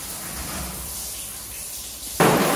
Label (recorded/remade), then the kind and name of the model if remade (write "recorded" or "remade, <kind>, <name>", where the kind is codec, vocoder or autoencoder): remade, vocoder, BigVGAN v2